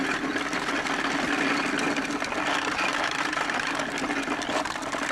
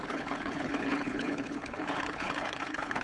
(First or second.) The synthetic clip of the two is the second